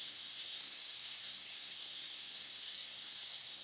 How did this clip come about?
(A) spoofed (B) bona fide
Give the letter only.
A